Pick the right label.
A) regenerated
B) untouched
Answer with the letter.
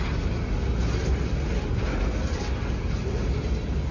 B